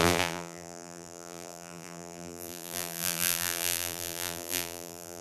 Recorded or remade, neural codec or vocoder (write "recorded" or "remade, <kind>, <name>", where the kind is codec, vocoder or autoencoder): remade, vocoder, BigVGAN v2